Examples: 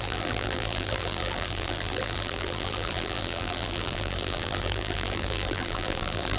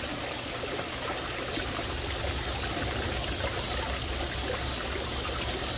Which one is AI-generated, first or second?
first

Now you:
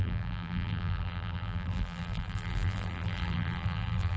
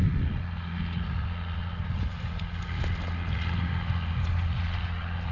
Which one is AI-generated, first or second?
first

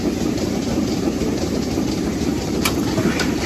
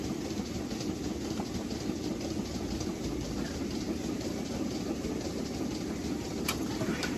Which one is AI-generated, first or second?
first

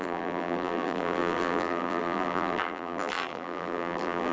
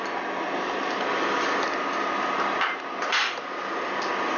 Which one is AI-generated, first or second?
first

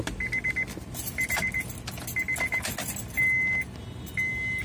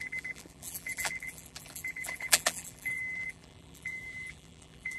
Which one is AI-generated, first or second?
second